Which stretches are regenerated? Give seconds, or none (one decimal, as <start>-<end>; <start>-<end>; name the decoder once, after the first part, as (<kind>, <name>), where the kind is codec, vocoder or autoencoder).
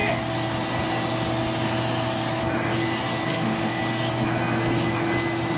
3.3-3.8 (autoencoder, DAC-VAE)